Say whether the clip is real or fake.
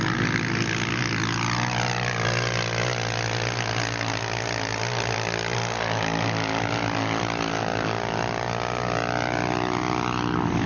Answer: real